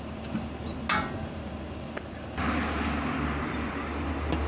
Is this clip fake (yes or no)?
no